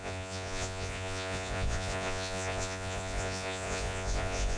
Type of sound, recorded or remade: remade